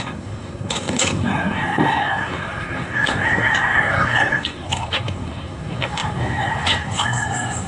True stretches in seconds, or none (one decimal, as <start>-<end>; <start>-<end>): none